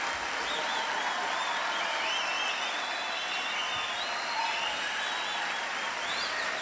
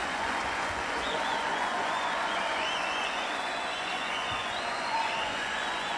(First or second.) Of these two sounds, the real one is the first